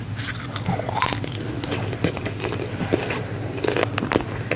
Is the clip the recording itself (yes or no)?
yes